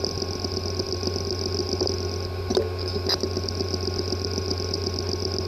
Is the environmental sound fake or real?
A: real